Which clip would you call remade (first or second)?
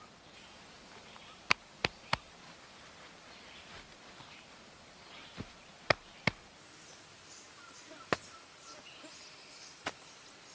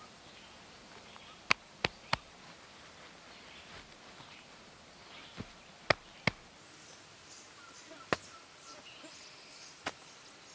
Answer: first